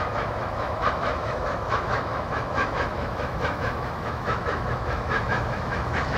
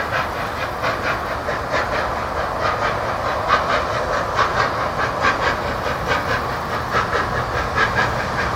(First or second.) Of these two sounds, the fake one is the first